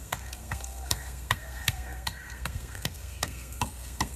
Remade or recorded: remade